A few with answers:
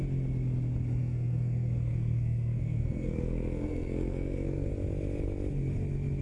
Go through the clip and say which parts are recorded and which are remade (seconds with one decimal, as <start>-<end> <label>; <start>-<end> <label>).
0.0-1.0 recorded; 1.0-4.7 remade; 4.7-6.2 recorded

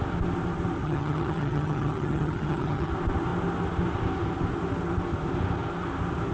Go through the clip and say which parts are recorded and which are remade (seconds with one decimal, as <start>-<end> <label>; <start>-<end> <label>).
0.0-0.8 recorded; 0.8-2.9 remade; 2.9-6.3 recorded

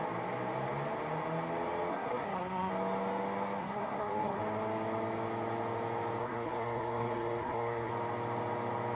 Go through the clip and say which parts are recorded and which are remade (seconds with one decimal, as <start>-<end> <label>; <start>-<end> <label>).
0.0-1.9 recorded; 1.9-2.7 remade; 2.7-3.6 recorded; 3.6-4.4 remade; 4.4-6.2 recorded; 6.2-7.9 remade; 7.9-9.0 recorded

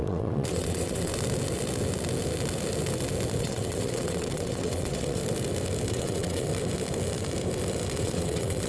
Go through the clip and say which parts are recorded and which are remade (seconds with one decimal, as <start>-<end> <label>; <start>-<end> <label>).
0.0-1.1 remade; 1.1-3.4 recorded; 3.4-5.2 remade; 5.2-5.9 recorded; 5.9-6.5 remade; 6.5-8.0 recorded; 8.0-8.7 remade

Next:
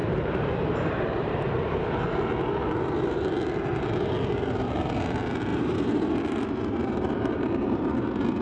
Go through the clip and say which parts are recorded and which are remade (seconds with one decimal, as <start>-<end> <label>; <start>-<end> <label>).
0.0-1.8 remade; 1.8-5.5 recorded; 5.5-7.9 remade; 7.9-8.4 recorded

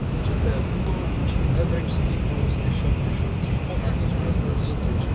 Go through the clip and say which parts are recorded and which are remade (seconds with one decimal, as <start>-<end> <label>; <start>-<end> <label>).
0.0-1.2 remade; 1.2-4.3 recorded; 4.3-5.1 remade